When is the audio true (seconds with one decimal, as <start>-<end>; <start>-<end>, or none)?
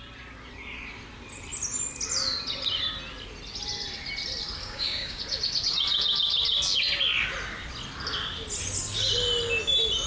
0.0-4.6; 5.2-10.1